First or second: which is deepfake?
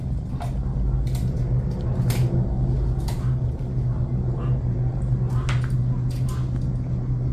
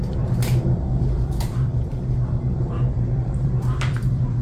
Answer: second